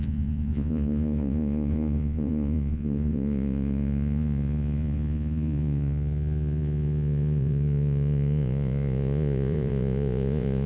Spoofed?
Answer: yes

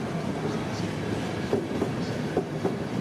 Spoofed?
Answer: no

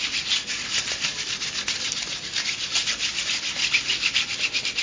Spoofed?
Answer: no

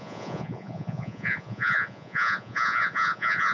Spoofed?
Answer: yes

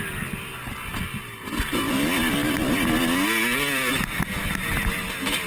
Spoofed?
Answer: no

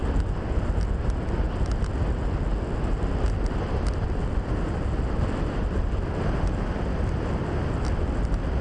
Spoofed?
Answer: no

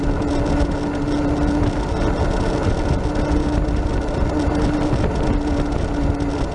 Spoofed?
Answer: no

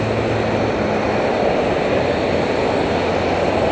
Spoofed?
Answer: no